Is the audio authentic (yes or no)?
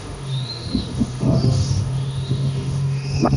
no